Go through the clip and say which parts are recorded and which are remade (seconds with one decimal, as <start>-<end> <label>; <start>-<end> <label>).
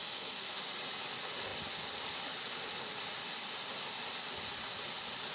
0.0-0.6 remade; 0.6-5.3 recorded